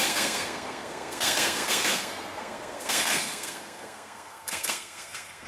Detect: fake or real fake